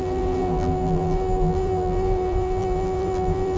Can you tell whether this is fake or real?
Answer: fake